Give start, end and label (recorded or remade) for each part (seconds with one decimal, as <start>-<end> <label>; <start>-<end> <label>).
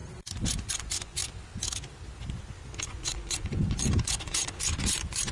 0.0-0.7 recorded; 0.7-1.2 remade; 1.2-2.8 recorded; 2.8-5.3 remade